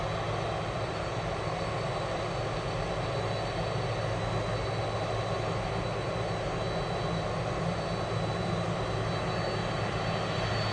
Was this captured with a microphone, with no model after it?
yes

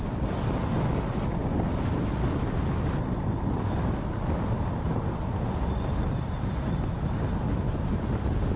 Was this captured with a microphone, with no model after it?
yes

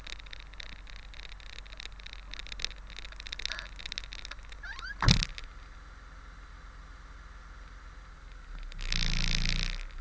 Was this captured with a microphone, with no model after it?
yes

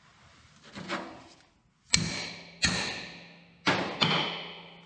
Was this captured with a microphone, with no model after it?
yes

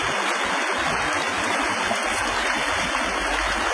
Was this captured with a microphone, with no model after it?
yes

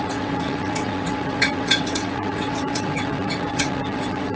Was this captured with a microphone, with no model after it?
no